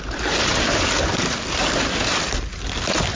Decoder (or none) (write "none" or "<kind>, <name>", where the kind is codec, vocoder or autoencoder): none